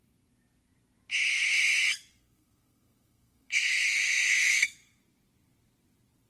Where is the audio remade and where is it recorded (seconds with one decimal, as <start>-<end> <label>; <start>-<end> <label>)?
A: 0.0-2.1 recorded; 2.1-5.0 remade; 5.0-6.3 recorded